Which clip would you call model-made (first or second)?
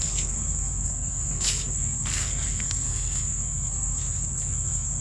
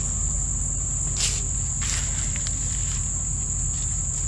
first